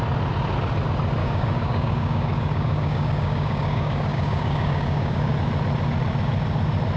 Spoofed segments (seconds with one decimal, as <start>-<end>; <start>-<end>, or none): 1.2-5.3